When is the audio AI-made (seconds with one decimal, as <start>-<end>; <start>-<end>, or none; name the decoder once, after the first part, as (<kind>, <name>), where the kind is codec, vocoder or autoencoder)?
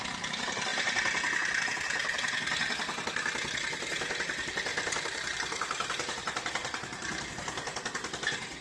0.7-1.6 (vocoder, BigVGAN v2); 4.7-7.3